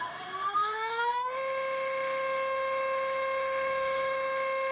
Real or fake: fake